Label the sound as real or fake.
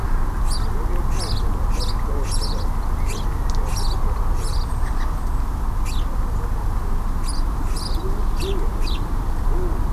real